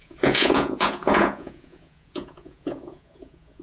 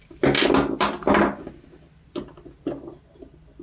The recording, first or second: second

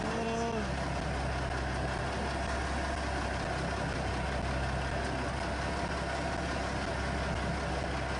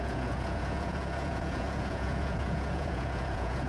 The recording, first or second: first